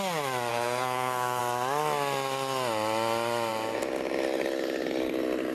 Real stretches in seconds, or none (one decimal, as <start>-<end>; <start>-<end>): 0.0-0.5; 1.4-5.5